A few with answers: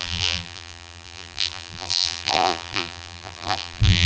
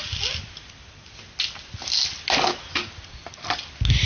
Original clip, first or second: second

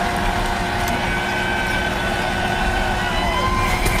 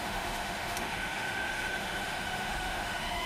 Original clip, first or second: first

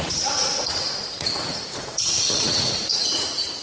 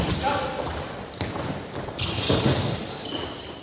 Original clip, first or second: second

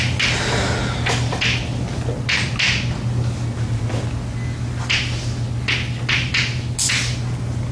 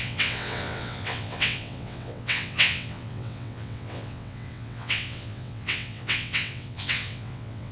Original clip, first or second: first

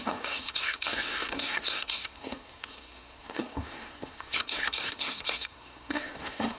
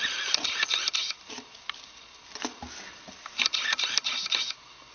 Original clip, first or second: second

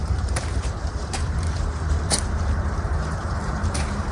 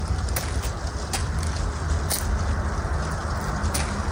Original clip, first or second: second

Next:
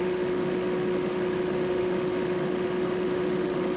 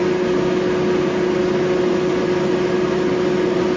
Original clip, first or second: second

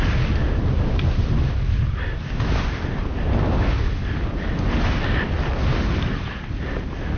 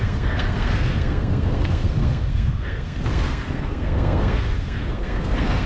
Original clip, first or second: first